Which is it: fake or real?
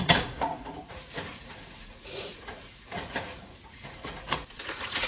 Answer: fake